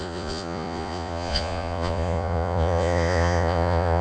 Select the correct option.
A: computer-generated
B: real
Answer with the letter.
A